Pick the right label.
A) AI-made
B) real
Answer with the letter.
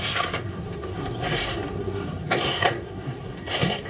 A